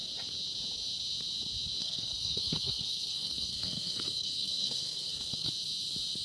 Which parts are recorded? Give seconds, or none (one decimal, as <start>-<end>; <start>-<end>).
0.0-1.8; 5.5-6.2